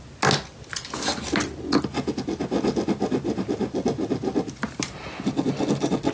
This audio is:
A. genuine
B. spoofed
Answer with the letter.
A